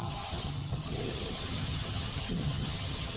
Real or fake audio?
fake